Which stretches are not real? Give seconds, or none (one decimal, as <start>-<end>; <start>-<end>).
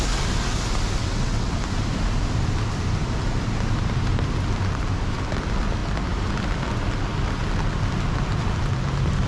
1.0-1.5